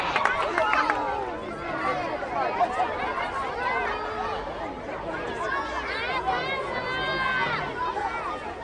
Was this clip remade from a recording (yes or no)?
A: no